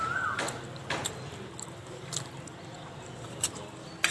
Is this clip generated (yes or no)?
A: no